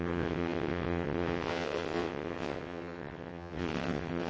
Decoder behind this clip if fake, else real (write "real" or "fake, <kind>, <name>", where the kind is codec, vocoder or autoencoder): fake, vocoder, WaveNeXt